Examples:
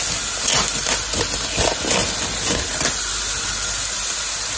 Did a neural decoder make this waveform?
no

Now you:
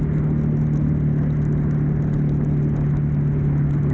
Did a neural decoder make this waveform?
no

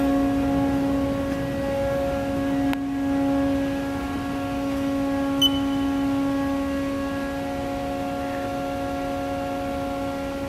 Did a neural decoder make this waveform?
no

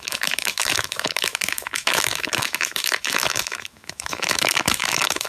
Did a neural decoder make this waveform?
yes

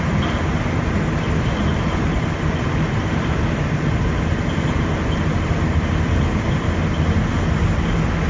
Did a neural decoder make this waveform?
no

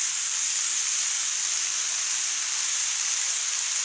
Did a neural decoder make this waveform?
no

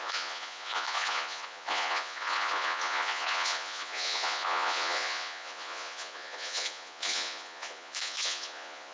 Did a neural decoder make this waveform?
yes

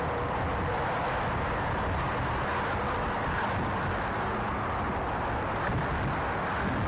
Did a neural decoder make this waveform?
no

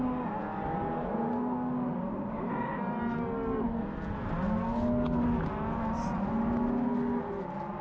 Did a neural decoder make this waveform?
no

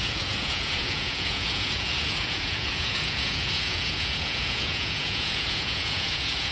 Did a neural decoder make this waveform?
yes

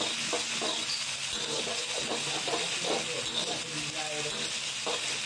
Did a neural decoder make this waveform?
no